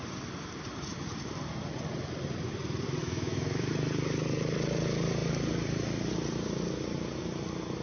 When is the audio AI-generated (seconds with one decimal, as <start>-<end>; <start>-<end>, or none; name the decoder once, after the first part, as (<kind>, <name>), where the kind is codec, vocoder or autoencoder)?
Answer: 3.0-3.7 (autoencoder, DAC-VAE)